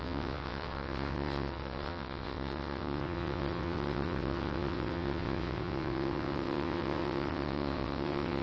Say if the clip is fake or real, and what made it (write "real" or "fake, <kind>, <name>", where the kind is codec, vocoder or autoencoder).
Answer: fake, vocoder, WaveNeXt